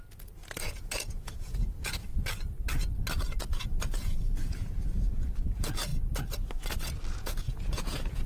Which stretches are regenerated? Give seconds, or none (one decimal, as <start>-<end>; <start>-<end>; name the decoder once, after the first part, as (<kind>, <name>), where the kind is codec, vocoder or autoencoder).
0.0-2.1 (vocoder, Vocos); 3.4-5.9; 7.1-8.3